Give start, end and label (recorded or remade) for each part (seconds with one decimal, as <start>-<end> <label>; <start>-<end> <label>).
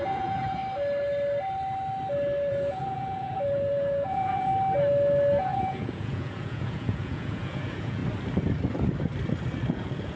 0.0-0.6 remade; 0.6-2.5 recorded; 2.5-4.5 remade; 4.5-5.4 recorded; 5.4-8.0 remade; 8.0-9.7 recorded; 9.7-10.2 remade